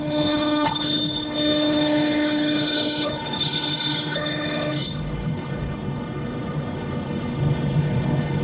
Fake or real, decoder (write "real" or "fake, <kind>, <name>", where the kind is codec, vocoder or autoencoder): fake, codec, HILCodec